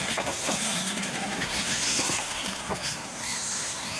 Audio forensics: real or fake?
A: fake